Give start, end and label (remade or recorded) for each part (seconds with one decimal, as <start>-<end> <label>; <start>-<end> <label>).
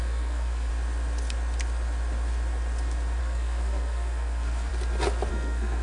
0.0-0.7 remade; 0.7-3.2 recorded; 3.2-4.7 remade; 4.7-5.3 recorded; 5.3-5.8 remade